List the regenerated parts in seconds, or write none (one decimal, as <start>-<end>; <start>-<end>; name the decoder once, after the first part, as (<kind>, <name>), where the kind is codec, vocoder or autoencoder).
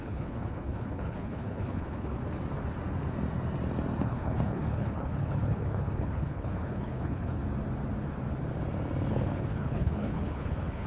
0.0-2.2 (codec, HILCodec); 4.0-7.4; 9.1-10.9